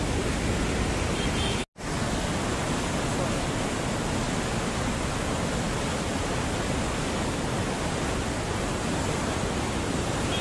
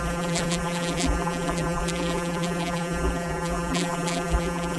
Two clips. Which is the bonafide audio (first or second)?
first